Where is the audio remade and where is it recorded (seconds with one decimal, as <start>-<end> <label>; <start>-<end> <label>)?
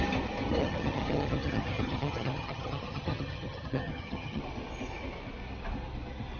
0.0-0.6 recorded; 0.6-4.4 remade; 4.4-6.4 recorded